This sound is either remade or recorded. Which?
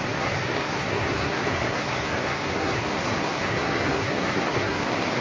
remade